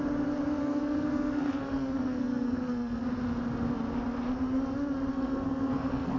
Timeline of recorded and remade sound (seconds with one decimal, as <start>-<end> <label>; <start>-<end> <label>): 0.0-0.6 recorded; 0.6-3.0 remade; 3.0-5.1 recorded; 5.1-6.2 remade